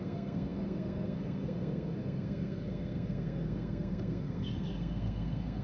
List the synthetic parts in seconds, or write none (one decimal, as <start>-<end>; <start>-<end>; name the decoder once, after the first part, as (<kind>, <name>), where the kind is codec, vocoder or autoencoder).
0.0-5.6 (codec, SNAC)